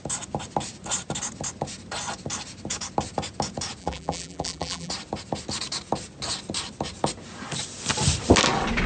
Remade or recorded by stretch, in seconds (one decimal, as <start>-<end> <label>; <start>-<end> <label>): 0.0-3.8 recorded; 3.8-4.9 remade; 4.9-8.9 recorded